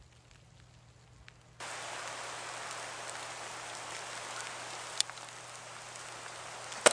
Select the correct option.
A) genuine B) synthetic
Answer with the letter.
A